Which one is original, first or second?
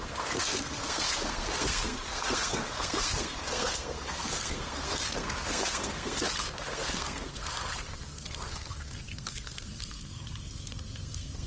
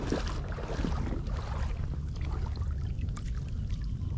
second